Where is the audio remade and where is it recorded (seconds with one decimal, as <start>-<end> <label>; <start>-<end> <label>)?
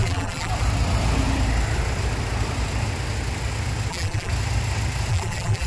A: 0.0-0.5 remade; 0.5-3.9 recorded; 3.9-4.3 remade; 4.3-5.1 recorded; 5.1-5.7 remade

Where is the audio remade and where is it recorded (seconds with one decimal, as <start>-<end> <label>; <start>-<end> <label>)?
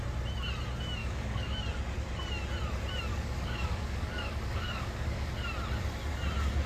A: 0.0-1.0 recorded; 1.0-1.6 remade; 1.6-3.1 recorded; 3.1-5.3 remade; 5.3-6.7 recorded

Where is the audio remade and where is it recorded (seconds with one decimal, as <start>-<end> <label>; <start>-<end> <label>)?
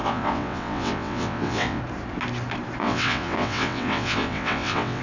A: 0.0-1.8 remade; 1.8-2.8 recorded; 2.8-5.0 remade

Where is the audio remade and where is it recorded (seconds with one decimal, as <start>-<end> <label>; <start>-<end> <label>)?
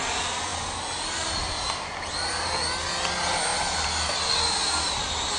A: 0.0-5.4 recorded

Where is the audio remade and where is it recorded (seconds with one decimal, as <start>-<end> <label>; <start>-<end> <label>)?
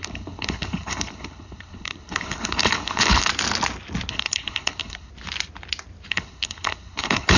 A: 0.0-3.3 remade; 3.3-4.1 recorded; 4.1-5.1 remade; 5.1-6.1 recorded; 6.1-7.4 remade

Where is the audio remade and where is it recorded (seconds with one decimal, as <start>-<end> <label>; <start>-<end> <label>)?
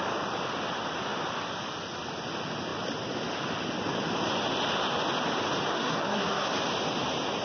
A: 0.0-5.7 recorded; 5.7-6.5 remade; 6.5-7.4 recorded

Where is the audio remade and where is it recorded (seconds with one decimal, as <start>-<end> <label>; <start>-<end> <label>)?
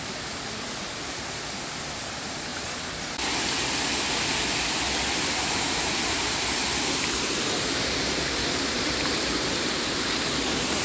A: 0.0-10.8 recorded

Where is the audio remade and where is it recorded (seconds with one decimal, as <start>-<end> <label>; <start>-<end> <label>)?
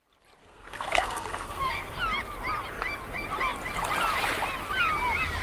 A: 0.0-0.4 recorded; 0.4-2.0 remade; 2.0-5.4 recorded